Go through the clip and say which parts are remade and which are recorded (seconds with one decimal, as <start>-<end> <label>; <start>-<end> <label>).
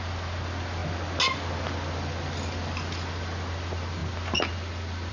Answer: 0.0-5.1 recorded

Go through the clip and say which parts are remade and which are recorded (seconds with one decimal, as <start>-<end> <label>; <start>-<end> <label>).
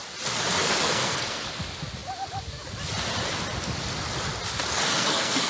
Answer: 0.0-0.6 recorded; 0.6-1.5 remade; 1.5-4.9 recorded; 4.9-5.5 remade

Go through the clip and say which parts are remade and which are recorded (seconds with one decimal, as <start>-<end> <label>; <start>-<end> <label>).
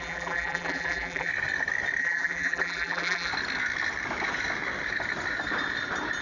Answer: 0.0-1.3 remade; 1.3-2.0 recorded; 2.0-3.3 remade; 3.3-6.2 recorded